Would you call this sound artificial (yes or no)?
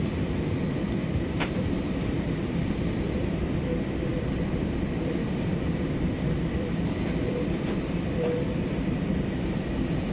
yes